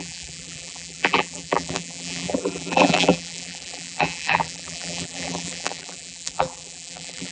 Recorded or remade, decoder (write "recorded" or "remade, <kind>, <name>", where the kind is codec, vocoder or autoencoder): remade, vocoder, BigVGAN v2